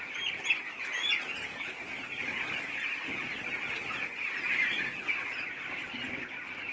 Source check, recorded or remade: recorded